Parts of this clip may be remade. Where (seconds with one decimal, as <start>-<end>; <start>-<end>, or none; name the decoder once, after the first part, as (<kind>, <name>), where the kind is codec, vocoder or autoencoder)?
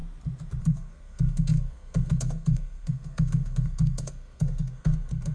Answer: 0.6-5.3 (codec, SNAC)